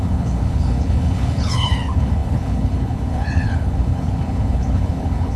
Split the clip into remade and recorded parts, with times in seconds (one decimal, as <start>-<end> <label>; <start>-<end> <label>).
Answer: 0.0-5.4 remade